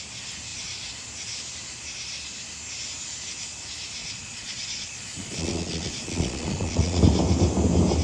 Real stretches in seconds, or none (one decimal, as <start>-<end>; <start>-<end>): 0.0-4.0; 7.0-8.0